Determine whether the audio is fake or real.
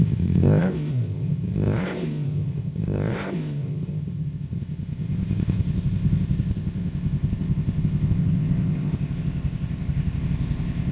fake